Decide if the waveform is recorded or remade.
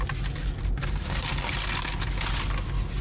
recorded